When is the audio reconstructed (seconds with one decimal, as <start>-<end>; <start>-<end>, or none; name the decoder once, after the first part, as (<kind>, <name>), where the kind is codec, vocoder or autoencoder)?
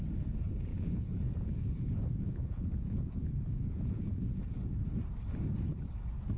0.7-4.4 (vocoder, Vocos)